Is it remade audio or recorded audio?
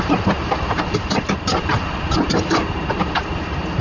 remade